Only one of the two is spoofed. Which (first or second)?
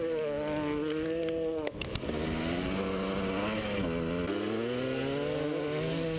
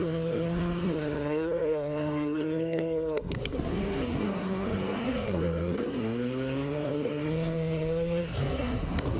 second